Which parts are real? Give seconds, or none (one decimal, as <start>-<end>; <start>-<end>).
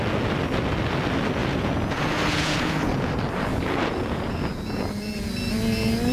0.0-1.4; 3.1-3.5; 5.3-6.1